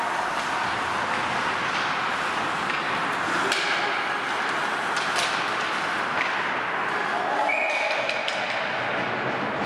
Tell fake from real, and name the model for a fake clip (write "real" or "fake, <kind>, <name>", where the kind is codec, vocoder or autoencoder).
real